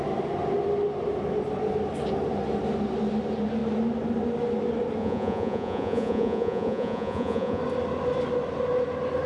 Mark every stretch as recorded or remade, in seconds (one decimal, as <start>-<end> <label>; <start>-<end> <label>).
0.0-5.0 recorded; 5.0-7.6 remade; 7.6-9.3 recorded